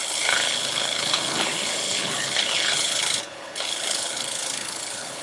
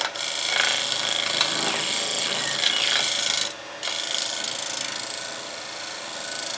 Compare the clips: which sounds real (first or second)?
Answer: second